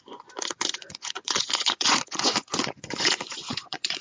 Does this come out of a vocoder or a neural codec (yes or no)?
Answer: yes